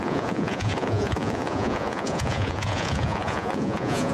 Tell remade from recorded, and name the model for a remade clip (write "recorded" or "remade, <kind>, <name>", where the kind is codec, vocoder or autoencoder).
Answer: remade, vocoder, Vocos